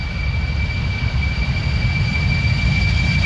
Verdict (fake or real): real